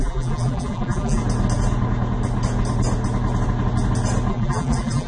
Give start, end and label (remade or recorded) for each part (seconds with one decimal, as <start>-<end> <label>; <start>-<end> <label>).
0.0-1.2 remade; 1.2-4.3 recorded; 4.3-5.1 remade